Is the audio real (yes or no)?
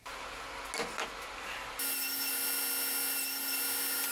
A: yes